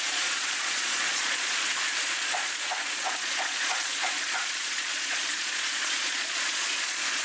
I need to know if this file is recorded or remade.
remade